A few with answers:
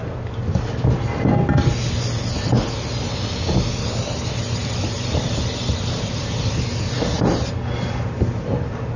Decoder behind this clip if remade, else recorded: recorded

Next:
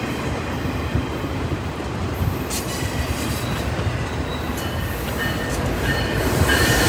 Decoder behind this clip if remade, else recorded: recorded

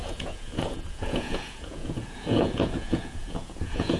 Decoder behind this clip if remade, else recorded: remade, vocoder, Vocos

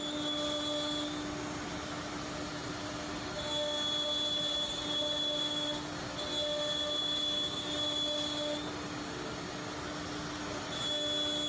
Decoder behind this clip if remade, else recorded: recorded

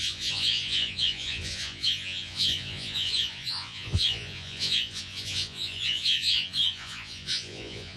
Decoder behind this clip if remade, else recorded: remade, vocoder, Vocos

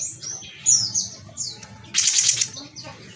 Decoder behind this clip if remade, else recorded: recorded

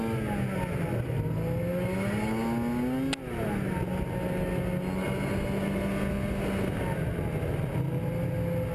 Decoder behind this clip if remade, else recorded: recorded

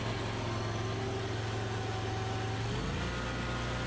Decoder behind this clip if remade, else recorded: recorded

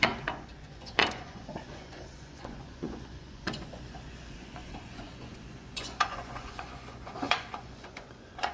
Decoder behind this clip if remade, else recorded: remade, vocoder, Vocos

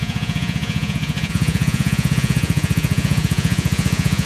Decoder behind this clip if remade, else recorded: remade, vocoder, Vocos